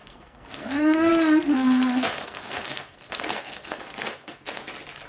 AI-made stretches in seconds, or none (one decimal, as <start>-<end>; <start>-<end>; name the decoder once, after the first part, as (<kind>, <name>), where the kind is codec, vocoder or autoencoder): 0.0-1.1 (codec, SNAC); 1.5-4.6